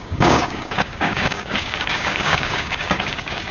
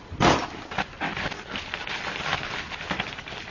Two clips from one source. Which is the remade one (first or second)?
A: first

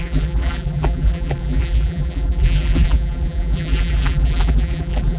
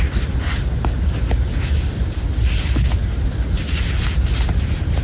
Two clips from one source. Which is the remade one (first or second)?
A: first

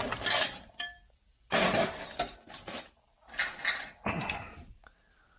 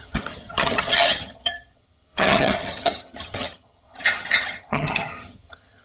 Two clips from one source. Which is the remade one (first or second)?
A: second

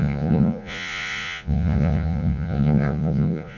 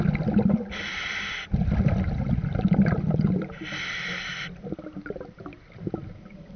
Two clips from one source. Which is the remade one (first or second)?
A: first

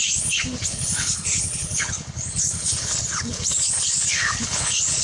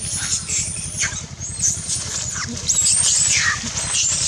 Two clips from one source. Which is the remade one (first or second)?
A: first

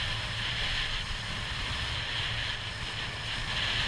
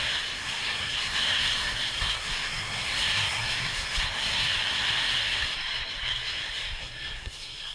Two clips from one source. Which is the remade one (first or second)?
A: second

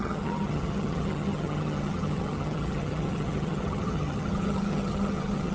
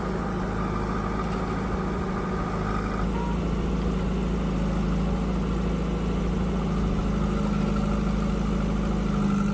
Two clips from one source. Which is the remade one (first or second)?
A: first